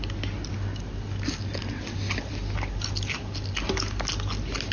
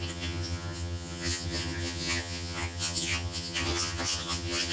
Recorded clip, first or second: first